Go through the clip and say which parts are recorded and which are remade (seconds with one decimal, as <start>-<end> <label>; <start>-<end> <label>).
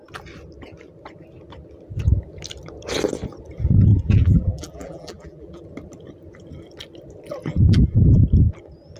0.0-3.9 recorded; 3.9-5.6 remade; 5.6-7.5 recorded; 7.5-8.2 remade; 8.2-9.0 recorded